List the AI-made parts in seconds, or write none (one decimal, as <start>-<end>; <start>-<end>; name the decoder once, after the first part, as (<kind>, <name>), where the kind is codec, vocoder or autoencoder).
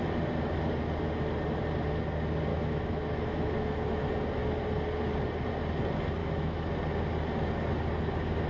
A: 2.5-4.0 (autoencoder, DAC-VAE); 6.2-6.7